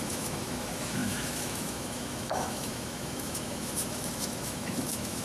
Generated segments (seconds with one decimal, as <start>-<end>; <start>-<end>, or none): 0.0-5.2